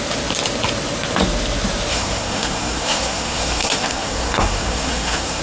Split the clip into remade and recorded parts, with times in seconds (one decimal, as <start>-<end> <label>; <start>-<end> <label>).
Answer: 0.0-1.9 recorded; 1.9-5.4 remade